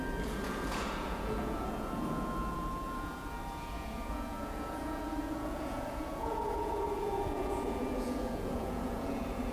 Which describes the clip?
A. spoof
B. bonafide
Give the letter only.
A